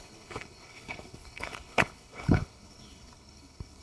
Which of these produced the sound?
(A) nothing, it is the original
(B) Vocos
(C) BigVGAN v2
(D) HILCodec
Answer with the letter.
D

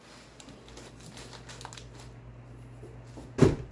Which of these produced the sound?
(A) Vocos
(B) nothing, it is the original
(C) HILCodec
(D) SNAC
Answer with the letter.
B